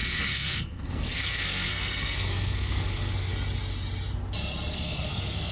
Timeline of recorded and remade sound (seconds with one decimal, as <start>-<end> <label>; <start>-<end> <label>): 0.0-3.3 remade; 3.3-4.7 recorded; 4.7-5.5 remade